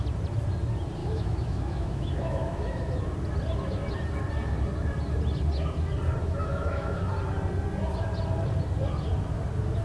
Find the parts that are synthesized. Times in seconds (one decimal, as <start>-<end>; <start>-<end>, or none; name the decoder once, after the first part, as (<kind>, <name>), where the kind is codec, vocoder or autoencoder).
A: 1.0-2.8 (autoencoder, DAC-VAE); 6.2-7.1

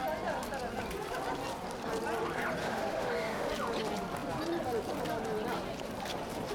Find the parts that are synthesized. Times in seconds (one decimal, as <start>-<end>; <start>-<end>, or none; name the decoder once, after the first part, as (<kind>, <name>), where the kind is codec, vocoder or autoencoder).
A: 2.6-3.5 (autoencoder, DAC-VAE)

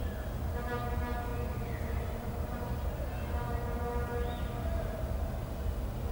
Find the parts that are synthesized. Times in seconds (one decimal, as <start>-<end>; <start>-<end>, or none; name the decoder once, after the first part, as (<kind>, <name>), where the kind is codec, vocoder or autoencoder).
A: none